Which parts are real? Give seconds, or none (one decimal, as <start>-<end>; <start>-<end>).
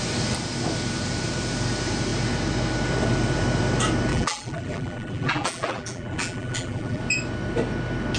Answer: 0.0-4.1; 7.0-8.2